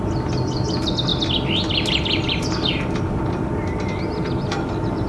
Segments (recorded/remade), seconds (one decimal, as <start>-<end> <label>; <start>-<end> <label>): 0.0-5.1 recorded